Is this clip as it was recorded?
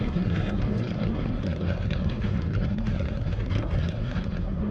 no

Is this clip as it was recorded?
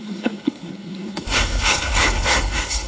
no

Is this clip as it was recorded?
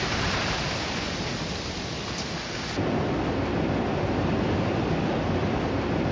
yes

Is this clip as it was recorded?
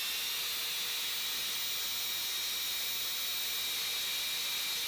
yes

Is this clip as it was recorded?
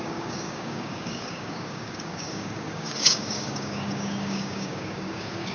no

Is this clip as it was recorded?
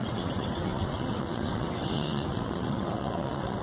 no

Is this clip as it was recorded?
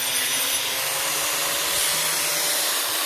yes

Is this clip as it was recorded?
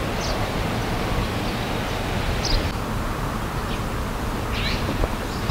yes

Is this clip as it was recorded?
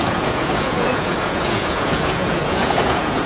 no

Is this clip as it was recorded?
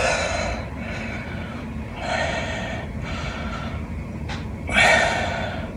yes